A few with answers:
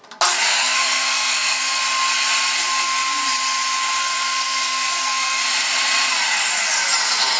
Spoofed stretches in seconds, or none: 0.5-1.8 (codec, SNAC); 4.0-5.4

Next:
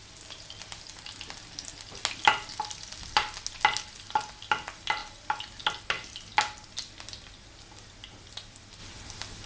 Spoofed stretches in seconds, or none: none

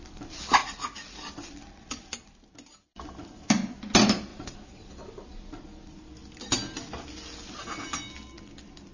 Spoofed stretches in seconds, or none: 0.6-1.2 (vocoder, Vocos); 4.3-4.9